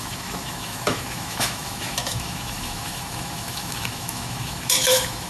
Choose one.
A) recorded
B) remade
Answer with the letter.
B